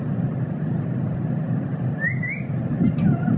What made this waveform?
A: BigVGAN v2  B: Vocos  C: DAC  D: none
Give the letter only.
D